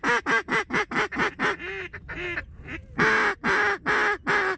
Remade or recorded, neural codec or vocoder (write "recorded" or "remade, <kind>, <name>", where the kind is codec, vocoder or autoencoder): recorded